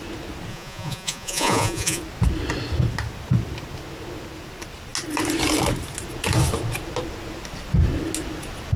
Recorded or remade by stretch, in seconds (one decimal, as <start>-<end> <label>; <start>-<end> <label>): 0.0-0.5 recorded; 0.5-2.0 remade; 2.0-8.8 recorded